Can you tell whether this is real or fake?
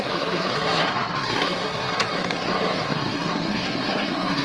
fake